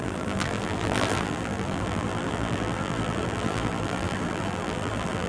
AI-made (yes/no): yes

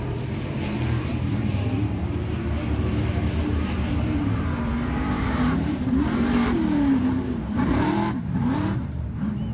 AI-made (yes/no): yes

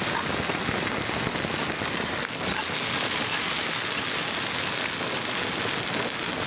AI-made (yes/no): no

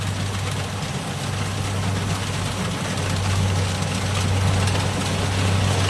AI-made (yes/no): no